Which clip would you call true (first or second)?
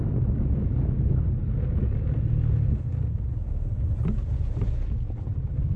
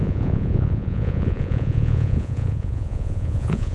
first